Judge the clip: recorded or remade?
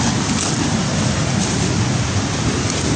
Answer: recorded